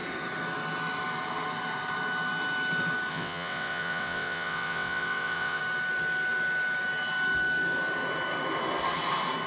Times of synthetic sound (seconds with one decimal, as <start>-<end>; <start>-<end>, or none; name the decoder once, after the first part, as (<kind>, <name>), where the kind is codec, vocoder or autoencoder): 3.1-5.6 (vocoder, WaveNeXt)